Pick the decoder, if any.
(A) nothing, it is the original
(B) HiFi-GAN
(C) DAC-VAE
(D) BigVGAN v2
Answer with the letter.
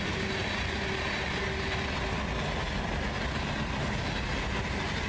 A